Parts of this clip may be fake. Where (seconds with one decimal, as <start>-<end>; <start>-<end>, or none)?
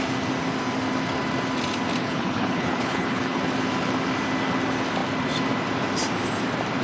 2.0-3.4